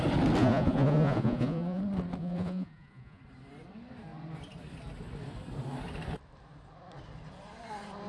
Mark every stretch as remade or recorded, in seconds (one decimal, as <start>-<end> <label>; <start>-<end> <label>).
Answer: 0.0-0.4 recorded; 0.4-1.8 remade; 1.8-2.2 recorded; 2.2-3.2 remade; 3.2-8.1 recorded

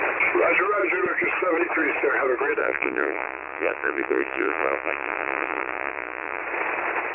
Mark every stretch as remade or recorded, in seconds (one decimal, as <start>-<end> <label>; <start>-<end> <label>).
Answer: 0.0-2.6 recorded; 2.6-6.4 remade; 6.4-7.1 recorded

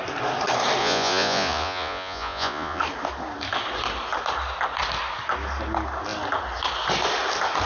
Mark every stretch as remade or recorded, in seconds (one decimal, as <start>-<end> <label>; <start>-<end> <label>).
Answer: 0.0-0.8 recorded; 0.8-2.8 remade; 2.8-7.7 recorded

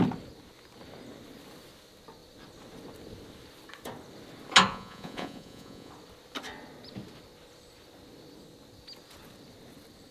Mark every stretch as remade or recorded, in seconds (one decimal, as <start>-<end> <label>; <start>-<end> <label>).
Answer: 0.0-4.7 recorded; 4.7-5.9 remade; 5.9-10.1 recorded

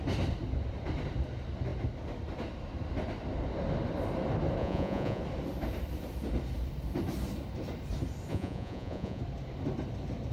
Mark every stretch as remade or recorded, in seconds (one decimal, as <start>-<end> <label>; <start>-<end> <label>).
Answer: 0.0-4.6 recorded; 4.6-5.2 remade; 5.2-8.3 recorded; 8.3-9.2 remade; 9.2-10.3 recorded

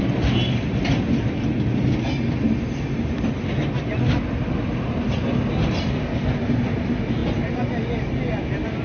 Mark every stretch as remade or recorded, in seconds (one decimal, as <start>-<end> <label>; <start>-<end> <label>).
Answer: 0.0-8.8 recorded

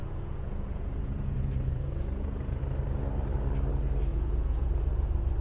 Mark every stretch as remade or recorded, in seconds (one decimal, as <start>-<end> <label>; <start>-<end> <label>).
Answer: 0.0-2.6 remade; 2.6-4.1 recorded; 4.1-4.7 remade; 4.7-5.4 recorded